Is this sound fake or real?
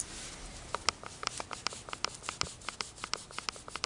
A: real